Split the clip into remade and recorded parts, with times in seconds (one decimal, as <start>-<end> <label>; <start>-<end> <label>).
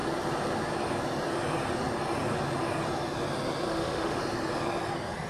0.0-3.7 recorded; 3.7-4.2 remade; 4.2-5.3 recorded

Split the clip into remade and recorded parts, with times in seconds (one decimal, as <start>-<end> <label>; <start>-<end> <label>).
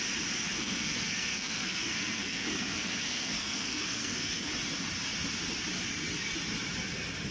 0.0-0.5 recorded; 0.5-4.5 remade; 4.5-7.3 recorded